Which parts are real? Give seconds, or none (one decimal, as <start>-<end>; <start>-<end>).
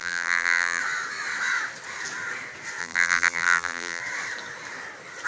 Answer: 0.8-2.8; 4.0-5.3